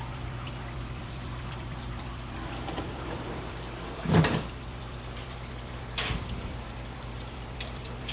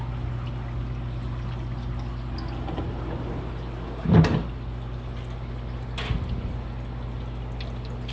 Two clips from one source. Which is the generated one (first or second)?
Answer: first